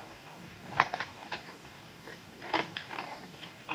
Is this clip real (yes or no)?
no